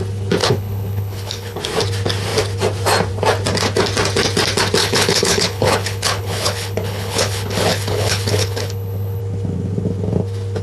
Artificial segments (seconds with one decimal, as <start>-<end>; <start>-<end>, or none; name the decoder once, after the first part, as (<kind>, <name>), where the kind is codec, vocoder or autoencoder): 0.4-1.6 (codec, HILCodec); 4.8-9.2